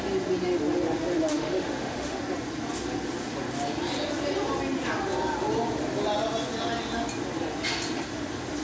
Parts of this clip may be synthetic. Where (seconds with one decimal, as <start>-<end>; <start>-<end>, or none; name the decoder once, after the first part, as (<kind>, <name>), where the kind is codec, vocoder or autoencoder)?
1.3-2.2 (autoencoder, DAC-VAE)